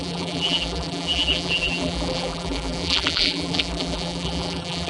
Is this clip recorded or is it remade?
remade